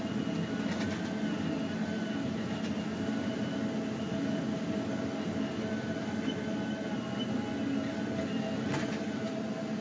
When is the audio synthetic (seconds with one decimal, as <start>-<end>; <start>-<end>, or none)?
none